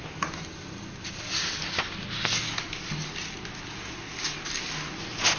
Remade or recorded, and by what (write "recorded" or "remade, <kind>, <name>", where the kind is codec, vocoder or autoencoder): recorded